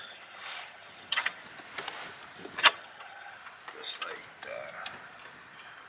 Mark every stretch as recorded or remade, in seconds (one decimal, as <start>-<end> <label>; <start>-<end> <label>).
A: 0.0-1.4 remade; 1.4-2.6 recorded; 2.6-3.4 remade; 3.4-5.9 recorded